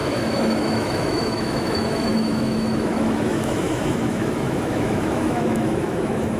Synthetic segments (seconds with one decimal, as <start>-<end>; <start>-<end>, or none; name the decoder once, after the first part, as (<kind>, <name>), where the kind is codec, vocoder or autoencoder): 0.0-6.4 (autoencoder, DAC-VAE)